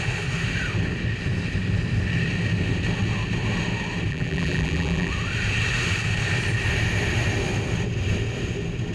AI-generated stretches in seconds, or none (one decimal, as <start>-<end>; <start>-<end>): 4.1-5.1